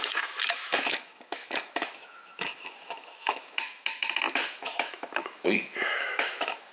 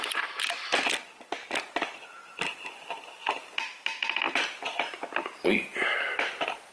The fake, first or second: first